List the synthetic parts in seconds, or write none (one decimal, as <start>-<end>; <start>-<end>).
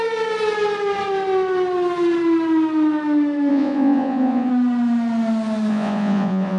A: 3.5-4.5; 5.7-6.6